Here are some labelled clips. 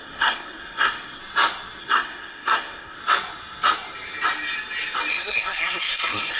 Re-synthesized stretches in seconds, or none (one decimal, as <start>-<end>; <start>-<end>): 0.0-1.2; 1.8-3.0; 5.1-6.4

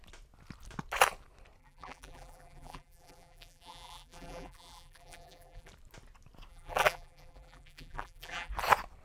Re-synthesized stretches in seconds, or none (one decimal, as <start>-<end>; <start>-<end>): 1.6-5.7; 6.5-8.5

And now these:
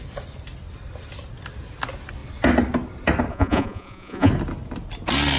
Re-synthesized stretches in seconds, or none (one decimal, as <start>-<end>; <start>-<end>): 3.3-4.3

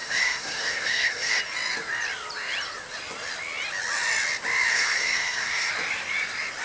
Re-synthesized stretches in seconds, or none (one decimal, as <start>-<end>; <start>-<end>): 0.0-1.4; 4.7-5.7

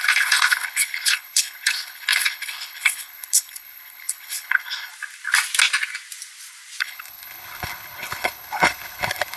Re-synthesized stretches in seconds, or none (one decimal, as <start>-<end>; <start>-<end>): 0.0-4.9; 6.8-9.4

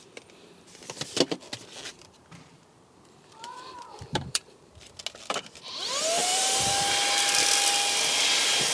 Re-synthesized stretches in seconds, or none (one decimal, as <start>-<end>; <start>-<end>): 1.9-5.0; 6.2-6.8

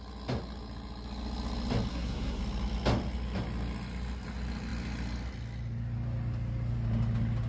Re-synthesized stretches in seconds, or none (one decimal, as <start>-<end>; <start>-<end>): 1.9-2.4